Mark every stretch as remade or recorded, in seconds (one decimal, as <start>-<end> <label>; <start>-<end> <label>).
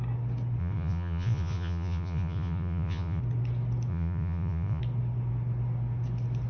0.0-0.6 recorded; 0.6-3.2 remade; 3.2-3.9 recorded; 3.9-4.8 remade; 4.8-6.5 recorded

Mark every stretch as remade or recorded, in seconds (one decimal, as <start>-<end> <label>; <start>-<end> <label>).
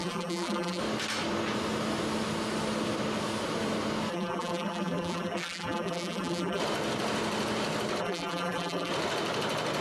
0.0-0.8 remade; 0.8-4.1 recorded; 4.1-6.6 remade; 6.6-8.0 recorded; 8.0-8.9 remade; 8.9-9.8 recorded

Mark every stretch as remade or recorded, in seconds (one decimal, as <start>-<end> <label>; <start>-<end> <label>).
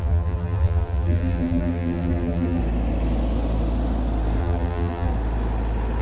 0.0-2.6 remade; 2.6-4.4 recorded; 4.4-5.1 remade; 5.1-6.0 recorded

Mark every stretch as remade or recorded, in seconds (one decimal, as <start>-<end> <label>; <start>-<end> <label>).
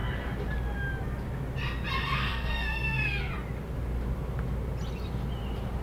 0.0-2.3 recorded; 2.3-3.3 remade; 3.3-5.8 recorded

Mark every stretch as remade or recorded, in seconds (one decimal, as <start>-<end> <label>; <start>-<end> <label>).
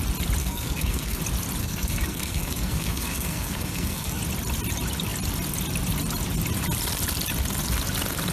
0.0-0.4 recorded; 0.4-1.2 remade; 1.2-1.6 recorded; 1.6-4.2 remade; 4.2-8.3 recorded